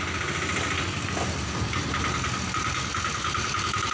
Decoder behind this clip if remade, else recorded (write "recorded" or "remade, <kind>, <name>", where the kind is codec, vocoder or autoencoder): recorded